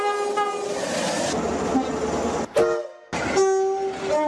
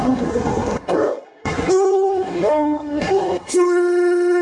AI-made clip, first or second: second